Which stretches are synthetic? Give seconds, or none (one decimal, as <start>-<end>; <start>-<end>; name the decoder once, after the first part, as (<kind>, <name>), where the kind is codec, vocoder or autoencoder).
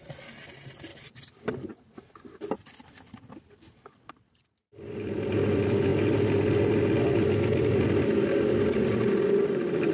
none